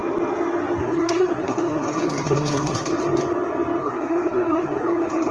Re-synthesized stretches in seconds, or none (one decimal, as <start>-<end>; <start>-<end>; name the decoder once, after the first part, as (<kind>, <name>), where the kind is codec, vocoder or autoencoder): 0.8-2.9 (codec, SNAC); 3.8-5.3